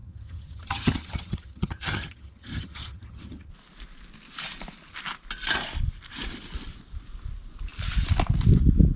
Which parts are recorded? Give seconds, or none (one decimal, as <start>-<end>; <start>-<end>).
3.5-9.0

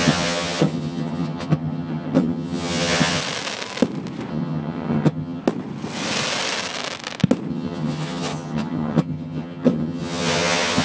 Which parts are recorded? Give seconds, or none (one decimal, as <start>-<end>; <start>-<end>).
3.2-4.3; 5.4-7.5

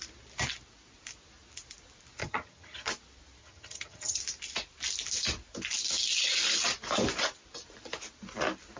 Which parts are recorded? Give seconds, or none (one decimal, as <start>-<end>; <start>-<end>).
0.0-2.2; 2.9-3.4; 4.2-8.8

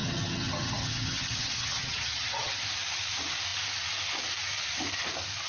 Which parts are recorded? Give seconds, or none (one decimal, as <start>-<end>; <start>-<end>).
2.5-5.5

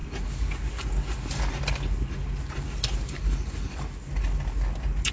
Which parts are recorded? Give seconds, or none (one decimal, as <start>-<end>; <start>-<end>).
0.0-5.1

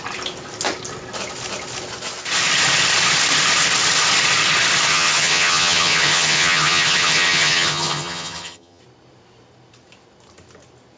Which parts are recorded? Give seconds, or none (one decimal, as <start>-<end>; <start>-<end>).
0.0-4.9; 8.8-11.0

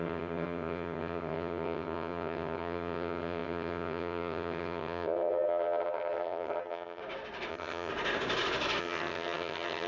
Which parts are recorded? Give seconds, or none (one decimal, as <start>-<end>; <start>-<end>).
7.0-7.5; 7.9-8.8